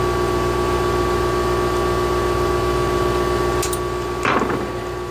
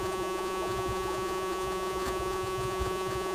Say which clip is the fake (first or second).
second